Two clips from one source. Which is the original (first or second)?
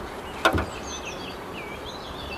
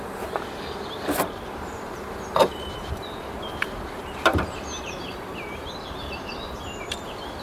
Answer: first